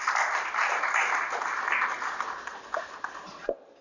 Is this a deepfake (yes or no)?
no